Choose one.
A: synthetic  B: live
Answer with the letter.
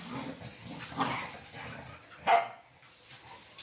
B